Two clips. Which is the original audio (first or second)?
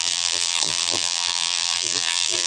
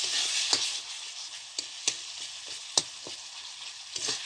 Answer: second